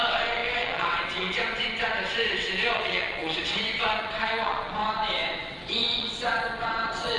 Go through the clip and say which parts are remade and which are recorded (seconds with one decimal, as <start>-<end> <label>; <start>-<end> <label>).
0.0-7.2 remade